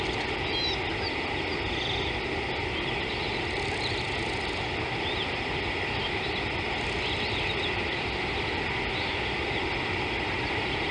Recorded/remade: recorded